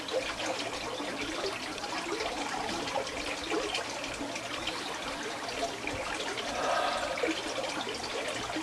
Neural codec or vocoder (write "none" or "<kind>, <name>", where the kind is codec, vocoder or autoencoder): none